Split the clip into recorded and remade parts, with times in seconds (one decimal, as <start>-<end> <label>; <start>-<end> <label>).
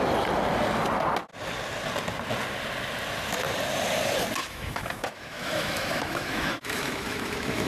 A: 0.0-4.4 recorded; 4.4-7.7 remade